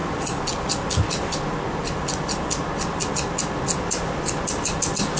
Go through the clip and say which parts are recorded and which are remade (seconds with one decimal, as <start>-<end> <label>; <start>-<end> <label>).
0.0-5.2 recorded